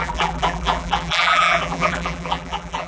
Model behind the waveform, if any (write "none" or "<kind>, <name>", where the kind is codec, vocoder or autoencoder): vocoder, BigVGAN v2